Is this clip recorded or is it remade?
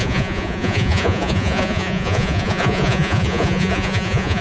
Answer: remade